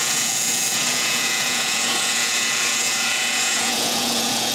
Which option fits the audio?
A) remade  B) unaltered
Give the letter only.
A